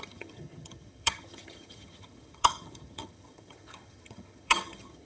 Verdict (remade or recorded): remade